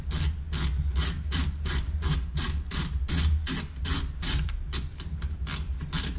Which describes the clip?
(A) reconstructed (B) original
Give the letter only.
B